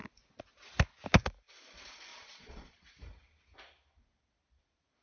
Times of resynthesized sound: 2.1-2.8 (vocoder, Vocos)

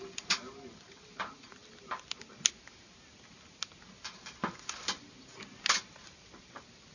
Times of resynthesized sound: none

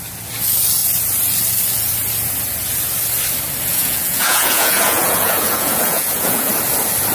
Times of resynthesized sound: 3.7-6.5 (vocoder, Vocos)

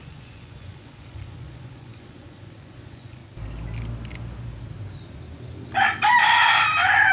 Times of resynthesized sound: 0.0-3.2 (vocoder, Vocos)

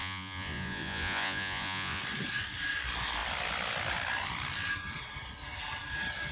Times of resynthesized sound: 0.0-2.0 (vocoder, Vocos)

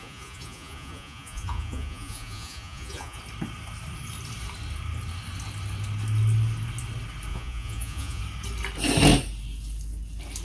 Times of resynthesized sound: 0.0-3.2 (vocoder, Vocos); 7.3-8.2

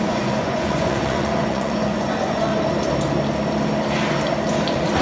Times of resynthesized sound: 0.0-2.5 (vocoder, Vocos)